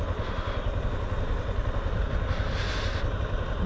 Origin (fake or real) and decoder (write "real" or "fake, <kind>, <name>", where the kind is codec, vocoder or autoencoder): real